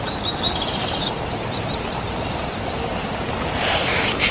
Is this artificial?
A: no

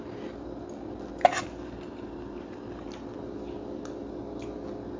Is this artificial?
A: no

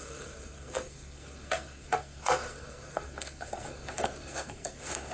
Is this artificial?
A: yes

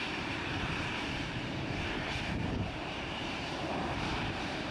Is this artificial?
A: yes